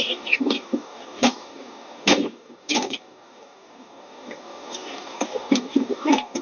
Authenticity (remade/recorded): remade